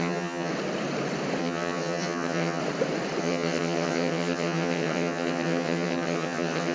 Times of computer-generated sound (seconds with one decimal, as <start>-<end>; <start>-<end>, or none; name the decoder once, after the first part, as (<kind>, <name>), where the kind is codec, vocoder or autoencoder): 0.0-0.5 (vocoder, HiFi-GAN); 1.4-2.6; 3.2-6.7